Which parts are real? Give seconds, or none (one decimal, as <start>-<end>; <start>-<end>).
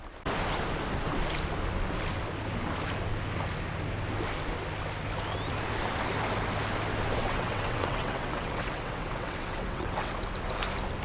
0.0-7.2; 10.1-11.0